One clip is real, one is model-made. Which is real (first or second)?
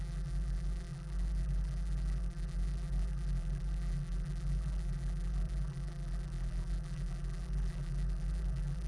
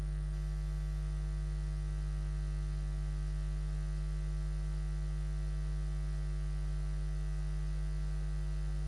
second